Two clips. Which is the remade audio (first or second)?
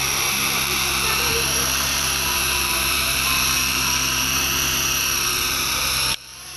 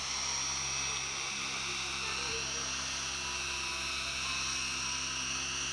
first